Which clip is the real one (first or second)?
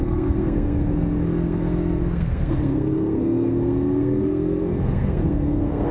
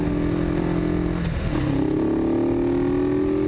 second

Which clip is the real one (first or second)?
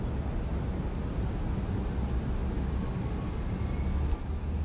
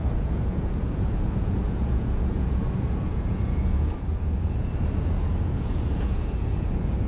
first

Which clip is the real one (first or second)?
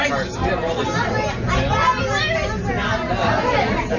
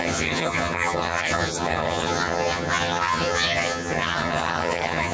first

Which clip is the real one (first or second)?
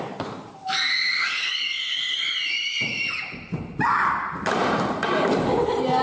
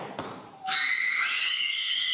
second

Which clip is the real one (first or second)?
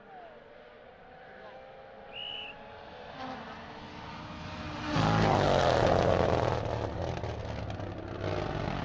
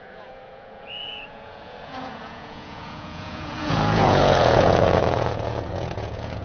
first